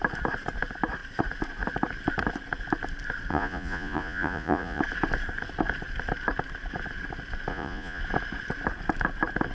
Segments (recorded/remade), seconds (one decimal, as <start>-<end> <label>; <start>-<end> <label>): 0.0-3.3 recorded; 3.3-4.8 remade; 4.8-7.5 recorded; 7.5-8.0 remade; 8.0-9.5 recorded

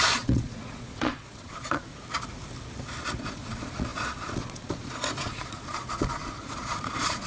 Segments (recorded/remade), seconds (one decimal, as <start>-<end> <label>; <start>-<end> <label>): 0.0-1.9 remade; 1.9-3.2 recorded; 3.2-7.3 remade

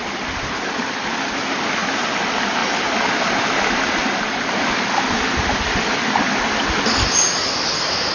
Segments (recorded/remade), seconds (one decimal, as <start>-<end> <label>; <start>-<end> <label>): 0.0-8.1 recorded

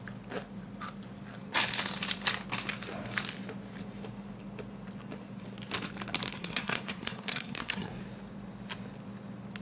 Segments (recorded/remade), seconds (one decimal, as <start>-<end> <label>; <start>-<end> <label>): 0.0-6.4 recorded; 6.4-8.0 remade; 8.0-9.6 recorded

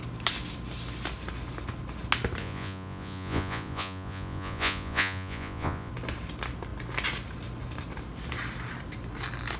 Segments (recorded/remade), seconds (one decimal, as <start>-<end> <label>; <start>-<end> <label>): 0.0-2.4 recorded; 2.4-5.9 remade; 5.9-9.6 recorded

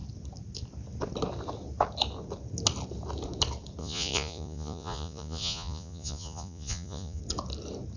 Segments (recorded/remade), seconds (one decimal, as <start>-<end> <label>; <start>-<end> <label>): 0.0-3.8 recorded; 3.8-7.2 remade; 7.2-8.0 recorded